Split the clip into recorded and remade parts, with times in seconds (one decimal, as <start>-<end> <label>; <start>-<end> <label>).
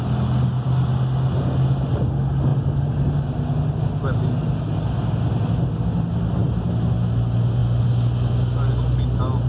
0.0-9.5 recorded